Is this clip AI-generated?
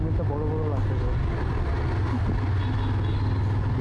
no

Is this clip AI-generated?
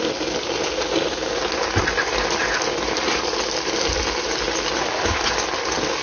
no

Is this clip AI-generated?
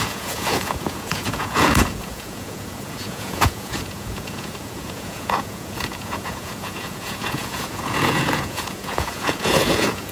yes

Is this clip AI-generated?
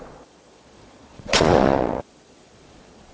yes